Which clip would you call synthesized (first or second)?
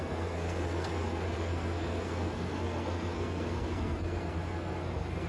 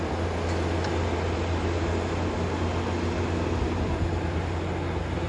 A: first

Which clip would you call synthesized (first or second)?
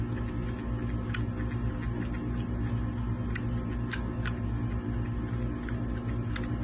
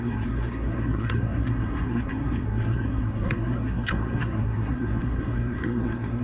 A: second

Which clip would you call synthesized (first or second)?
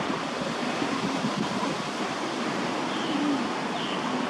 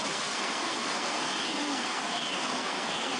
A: second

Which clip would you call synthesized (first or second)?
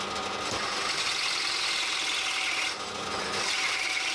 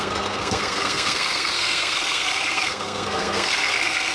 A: second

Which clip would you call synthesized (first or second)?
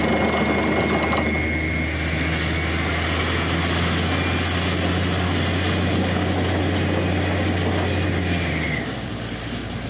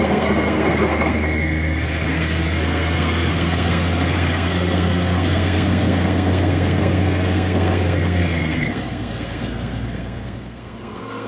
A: second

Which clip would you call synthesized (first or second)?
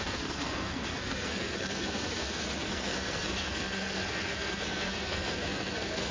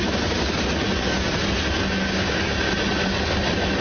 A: first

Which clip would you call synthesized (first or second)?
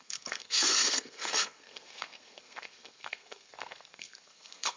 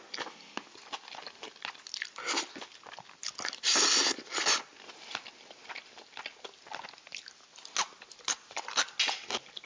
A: first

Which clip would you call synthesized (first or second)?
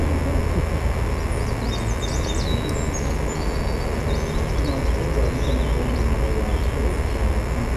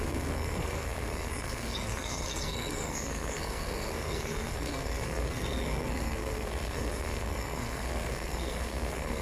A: second